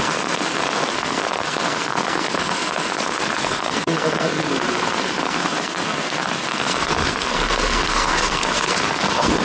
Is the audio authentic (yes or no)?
no